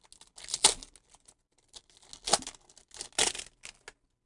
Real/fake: real